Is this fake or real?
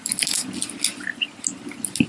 real